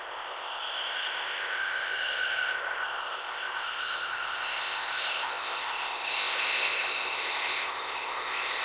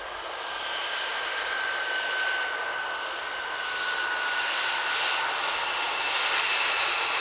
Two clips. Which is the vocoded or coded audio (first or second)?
first